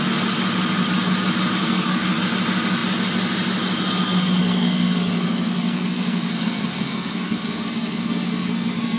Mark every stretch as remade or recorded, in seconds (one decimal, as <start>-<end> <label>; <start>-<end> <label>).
0.0-1.6 recorded; 1.6-2.2 remade; 2.2-4.4 recorded; 4.4-9.0 remade